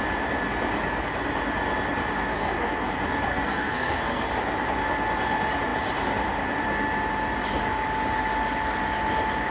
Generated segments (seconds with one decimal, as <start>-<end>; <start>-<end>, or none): 2.3-2.9; 3.3-4.3